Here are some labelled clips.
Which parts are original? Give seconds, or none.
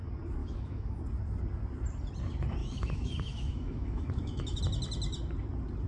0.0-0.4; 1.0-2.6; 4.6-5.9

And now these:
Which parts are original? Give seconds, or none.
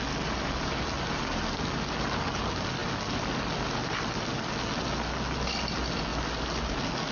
0.0-7.1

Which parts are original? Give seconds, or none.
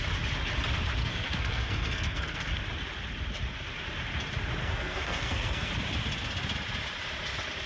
0.0-1.0; 2.5-4.6; 5.7-7.7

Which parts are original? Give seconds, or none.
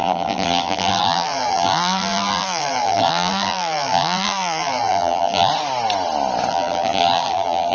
5.5-6.5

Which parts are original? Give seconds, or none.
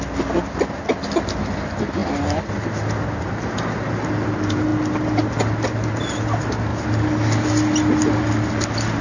0.0-9.0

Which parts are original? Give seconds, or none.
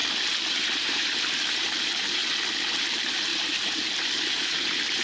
2.2-2.7